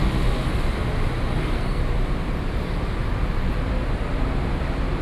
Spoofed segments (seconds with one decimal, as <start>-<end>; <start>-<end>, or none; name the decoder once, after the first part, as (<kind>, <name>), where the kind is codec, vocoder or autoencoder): 1.4-1.8 (codec, SNAC)